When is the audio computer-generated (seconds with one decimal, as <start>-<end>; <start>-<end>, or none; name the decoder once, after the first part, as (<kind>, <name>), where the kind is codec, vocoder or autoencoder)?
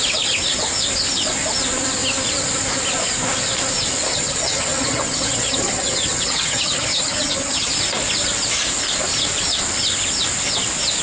4.1-7.7 (vocoder, HiFi-GAN)